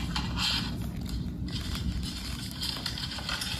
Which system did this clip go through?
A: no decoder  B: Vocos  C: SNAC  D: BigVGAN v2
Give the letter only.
A